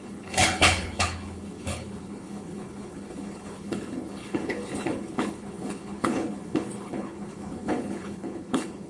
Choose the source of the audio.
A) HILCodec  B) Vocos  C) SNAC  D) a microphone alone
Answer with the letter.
A